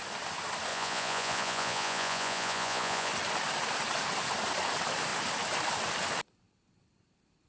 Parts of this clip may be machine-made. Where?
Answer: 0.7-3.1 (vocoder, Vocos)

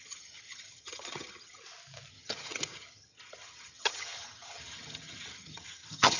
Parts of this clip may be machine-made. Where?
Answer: 0.0-1.6 (vocoder, HiFi-GAN); 2.1-6.2

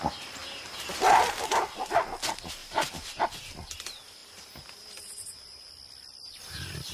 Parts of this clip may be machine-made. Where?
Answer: 0.4-2.0 (vocoder, BigVGAN v2); 2.6-3.2; 4.2-5.7

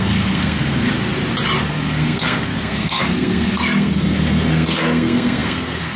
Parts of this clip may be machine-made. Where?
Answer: 0.0-0.9 (codec, SNAC); 1.6-6.0